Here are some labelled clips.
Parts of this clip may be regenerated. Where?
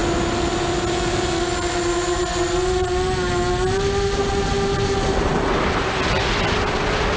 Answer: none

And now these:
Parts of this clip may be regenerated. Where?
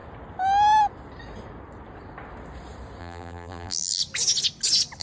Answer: 3.0-4.0 (vocoder, BigVGAN v2)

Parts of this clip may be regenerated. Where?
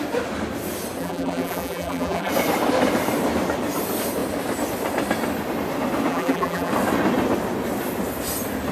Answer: 1.0-2.3 (vocoder, BigVGAN v2); 6.1-6.7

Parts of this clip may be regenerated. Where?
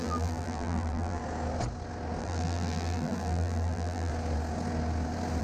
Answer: 0.0-1.2 (vocoder, BigVGAN v2); 2.2-4.1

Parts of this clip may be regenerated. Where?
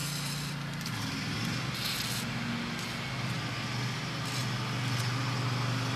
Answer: 0.0-1.7 (vocoder, BigVGAN v2)